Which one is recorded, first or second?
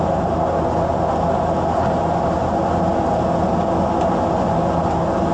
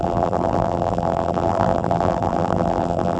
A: first